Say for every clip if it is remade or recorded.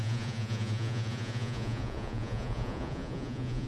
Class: remade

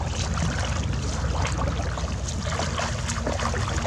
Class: recorded